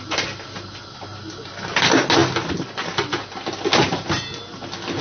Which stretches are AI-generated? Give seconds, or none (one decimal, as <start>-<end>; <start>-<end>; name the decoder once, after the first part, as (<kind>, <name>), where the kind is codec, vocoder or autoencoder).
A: none